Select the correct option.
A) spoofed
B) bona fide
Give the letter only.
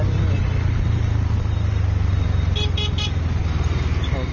B